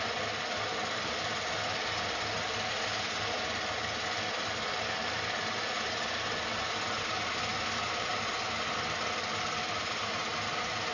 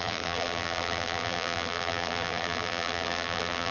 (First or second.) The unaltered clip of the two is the first